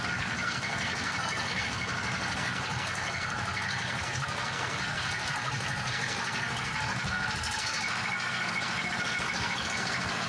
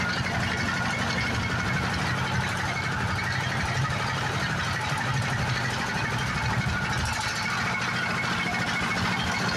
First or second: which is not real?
first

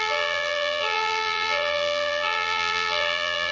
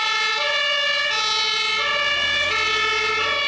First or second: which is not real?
first